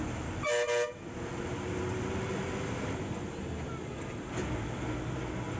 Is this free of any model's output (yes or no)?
yes